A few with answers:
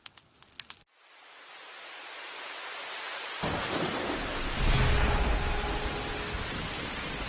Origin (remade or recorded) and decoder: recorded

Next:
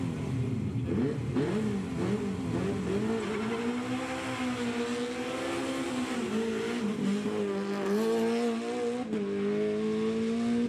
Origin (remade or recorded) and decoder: recorded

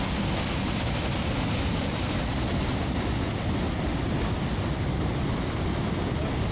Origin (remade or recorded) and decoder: recorded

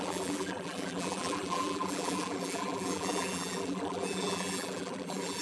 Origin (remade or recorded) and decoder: remade, vocoder, BigVGAN v2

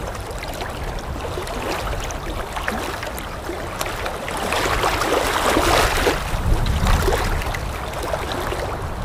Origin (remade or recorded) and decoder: recorded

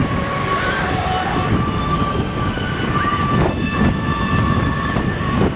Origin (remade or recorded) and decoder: recorded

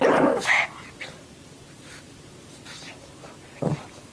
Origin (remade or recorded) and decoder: remade, vocoder, BigVGAN v2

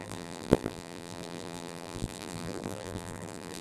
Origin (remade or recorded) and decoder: remade, vocoder, BigVGAN v2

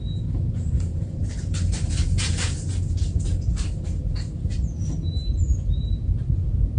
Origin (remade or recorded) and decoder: remade, vocoder, BigVGAN v2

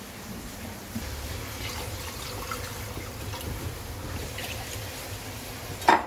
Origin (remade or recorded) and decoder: recorded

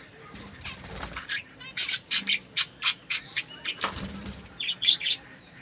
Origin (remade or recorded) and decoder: remade, vocoder, BigVGAN v2